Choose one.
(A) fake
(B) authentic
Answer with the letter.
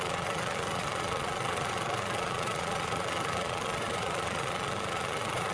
A